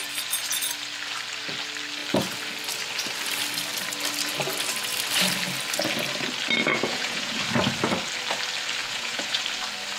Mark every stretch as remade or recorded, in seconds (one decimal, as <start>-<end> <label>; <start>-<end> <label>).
0.0-6.7 recorded; 6.7-7.4 remade; 7.4-8.8 recorded; 8.8-9.4 remade; 9.4-10.0 recorded